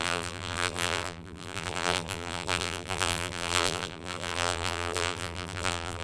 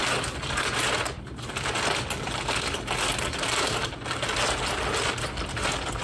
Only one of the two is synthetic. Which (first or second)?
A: first